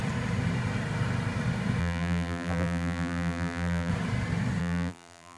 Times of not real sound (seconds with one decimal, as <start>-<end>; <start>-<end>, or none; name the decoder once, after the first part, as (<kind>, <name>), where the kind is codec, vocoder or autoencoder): 1.8-3.9 (vocoder, BigVGAN v2); 4.6-5.4